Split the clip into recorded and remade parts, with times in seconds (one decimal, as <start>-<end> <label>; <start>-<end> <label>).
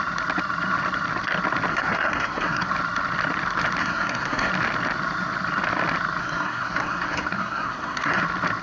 0.0-1.7 recorded; 1.7-2.7 remade; 2.7-3.8 recorded; 3.8-4.5 remade; 4.5-6.2 recorded; 6.2-8.2 remade; 8.2-8.6 recorded